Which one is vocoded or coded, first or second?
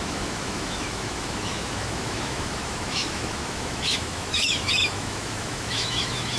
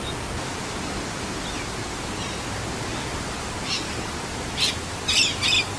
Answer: first